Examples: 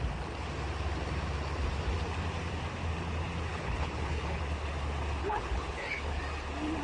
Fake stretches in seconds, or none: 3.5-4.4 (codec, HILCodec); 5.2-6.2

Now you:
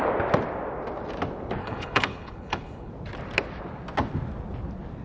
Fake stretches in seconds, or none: 1.6-2.9 (codec, HILCodec)